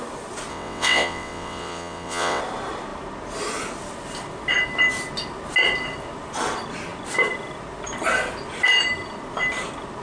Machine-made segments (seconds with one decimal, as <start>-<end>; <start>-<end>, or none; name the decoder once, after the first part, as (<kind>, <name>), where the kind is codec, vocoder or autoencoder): 0.5-2.4 (vocoder, WaveNeXt)